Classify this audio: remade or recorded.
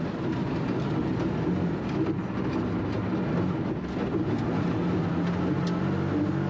recorded